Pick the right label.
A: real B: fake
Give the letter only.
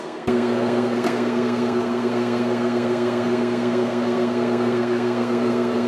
B